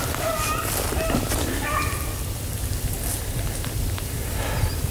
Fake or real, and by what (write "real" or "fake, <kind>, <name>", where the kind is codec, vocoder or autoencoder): real